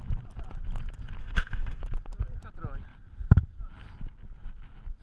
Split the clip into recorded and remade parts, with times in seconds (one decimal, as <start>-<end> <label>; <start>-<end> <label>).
0.0-1.2 recorded; 1.2-1.8 remade; 1.8-5.0 recorded